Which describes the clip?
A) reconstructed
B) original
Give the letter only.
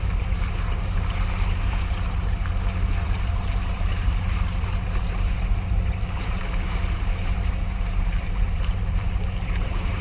A